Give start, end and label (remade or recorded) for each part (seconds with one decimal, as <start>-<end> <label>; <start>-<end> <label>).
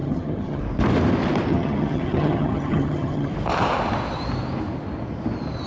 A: 0.0-0.6 remade; 0.6-1.5 recorded; 1.5-3.3 remade; 3.3-5.7 recorded